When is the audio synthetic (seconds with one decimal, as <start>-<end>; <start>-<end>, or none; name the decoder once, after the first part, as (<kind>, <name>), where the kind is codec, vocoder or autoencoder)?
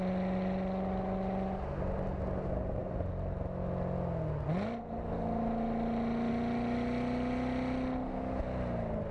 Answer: none